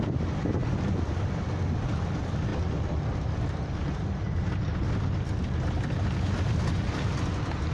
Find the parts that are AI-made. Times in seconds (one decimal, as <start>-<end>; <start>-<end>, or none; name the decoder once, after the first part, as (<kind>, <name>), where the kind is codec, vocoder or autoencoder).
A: none